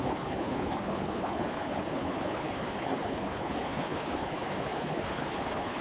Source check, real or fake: fake